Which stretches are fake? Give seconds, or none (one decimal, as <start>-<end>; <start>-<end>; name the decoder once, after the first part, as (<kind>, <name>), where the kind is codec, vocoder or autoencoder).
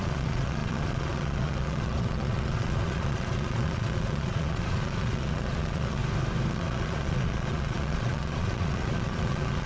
0.0-6.0 (vocoder, Vocos); 6.5-9.7